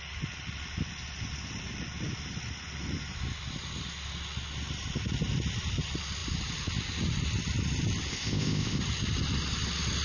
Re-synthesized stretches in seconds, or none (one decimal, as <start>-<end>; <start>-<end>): 8.1-8.8